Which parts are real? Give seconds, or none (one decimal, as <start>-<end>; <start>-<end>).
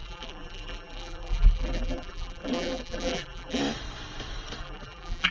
3.6-4.6